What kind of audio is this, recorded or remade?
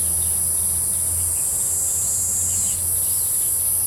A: recorded